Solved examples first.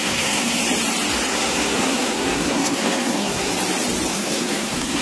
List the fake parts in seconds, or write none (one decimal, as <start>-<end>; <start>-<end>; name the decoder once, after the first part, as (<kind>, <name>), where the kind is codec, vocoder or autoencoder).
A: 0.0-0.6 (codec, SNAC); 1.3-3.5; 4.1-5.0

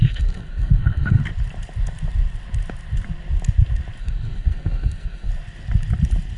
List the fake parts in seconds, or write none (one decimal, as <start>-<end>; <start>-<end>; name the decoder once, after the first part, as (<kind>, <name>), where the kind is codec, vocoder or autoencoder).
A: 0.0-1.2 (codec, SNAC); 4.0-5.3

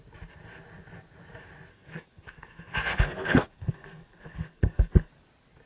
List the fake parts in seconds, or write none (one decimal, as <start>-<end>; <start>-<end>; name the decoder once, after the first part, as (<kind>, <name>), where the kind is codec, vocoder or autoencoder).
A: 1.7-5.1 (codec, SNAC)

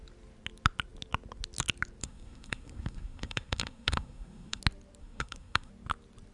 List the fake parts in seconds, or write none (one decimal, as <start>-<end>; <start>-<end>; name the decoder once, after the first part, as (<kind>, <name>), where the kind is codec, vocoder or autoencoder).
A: 2.0-4.6 (codec, SNAC); 5.0-5.7

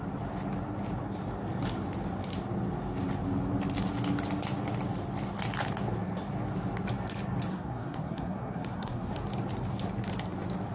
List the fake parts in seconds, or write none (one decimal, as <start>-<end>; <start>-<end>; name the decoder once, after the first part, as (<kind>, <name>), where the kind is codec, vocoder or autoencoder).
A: 7.5-9.1 (codec, SNAC)